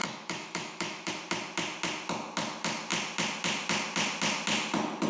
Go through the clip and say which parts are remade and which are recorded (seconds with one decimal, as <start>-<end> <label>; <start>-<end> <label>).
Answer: 0.0-1.1 remade; 1.1-5.1 recorded